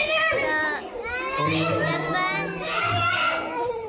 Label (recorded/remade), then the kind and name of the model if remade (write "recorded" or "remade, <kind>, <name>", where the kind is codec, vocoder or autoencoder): recorded